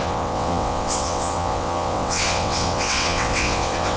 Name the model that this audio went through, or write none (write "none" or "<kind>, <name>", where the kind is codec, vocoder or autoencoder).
vocoder, WaveNeXt